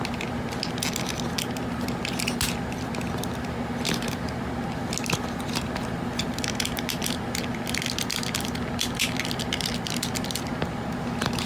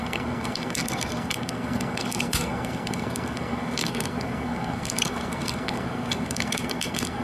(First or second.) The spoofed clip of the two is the second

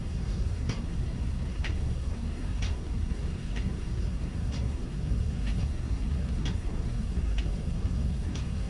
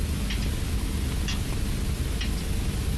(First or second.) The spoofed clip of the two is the first